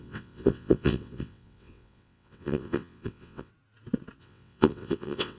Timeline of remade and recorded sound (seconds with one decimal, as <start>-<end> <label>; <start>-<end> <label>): 0.0-3.5 remade; 3.5-4.2 recorded; 4.2-5.4 remade